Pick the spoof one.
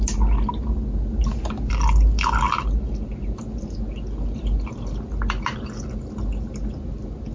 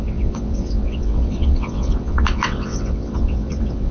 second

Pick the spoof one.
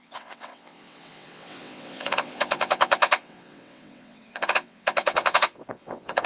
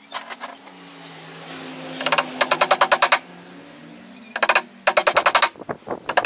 first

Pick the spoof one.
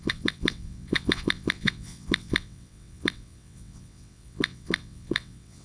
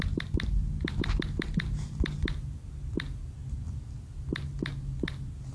first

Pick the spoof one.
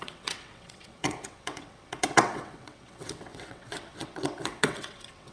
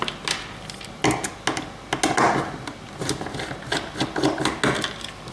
first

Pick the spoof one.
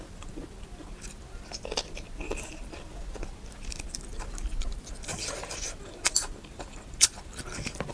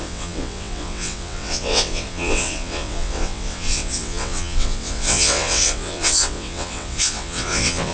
second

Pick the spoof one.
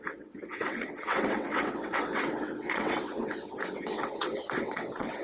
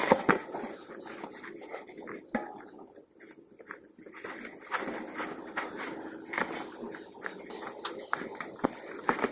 first